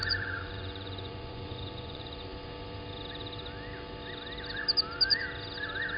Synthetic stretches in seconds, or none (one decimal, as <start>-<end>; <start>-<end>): 0.0-2.5